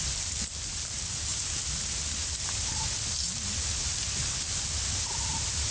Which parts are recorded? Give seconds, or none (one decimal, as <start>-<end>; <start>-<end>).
0.0-5.7